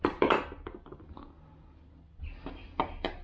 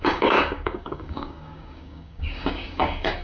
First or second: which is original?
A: first